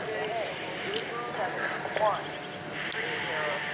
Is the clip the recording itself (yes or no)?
yes